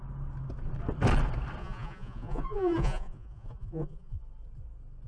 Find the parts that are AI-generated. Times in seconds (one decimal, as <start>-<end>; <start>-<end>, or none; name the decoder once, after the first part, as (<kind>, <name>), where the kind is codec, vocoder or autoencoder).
1.6-4.2 (vocoder, Vocos)